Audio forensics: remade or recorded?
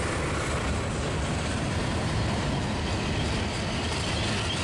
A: recorded